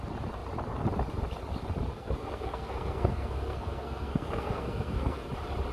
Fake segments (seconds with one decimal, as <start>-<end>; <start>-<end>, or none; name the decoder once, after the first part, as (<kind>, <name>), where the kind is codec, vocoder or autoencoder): 1.9-5.3 (codec, SNAC)